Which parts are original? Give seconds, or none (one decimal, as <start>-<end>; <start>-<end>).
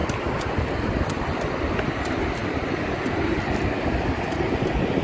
0.0-5.0